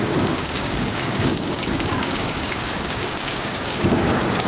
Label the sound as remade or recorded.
remade